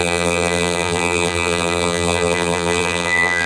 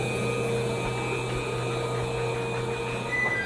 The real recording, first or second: second